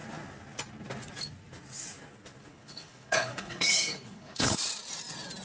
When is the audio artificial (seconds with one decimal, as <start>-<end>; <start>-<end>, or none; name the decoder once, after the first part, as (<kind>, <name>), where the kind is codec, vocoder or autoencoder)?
2.5-4.6 (codec, HILCodec)